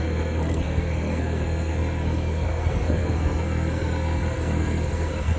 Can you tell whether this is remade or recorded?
remade